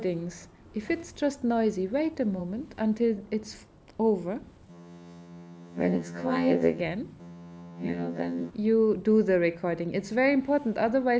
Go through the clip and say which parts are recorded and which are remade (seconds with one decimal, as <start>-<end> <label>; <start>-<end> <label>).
0.0-4.7 recorded; 4.7-6.8 remade; 6.8-7.2 recorded; 7.2-8.5 remade; 8.5-11.2 recorded